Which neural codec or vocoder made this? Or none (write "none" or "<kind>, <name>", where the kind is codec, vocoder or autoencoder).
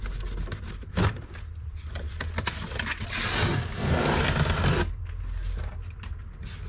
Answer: none